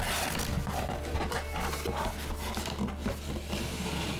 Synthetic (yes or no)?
no